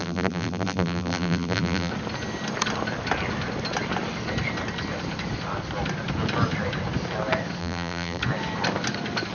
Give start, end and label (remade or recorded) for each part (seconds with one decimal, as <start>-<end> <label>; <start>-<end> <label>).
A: 0.0-1.9 remade; 1.9-7.6 recorded; 7.6-8.2 remade; 8.2-9.3 recorded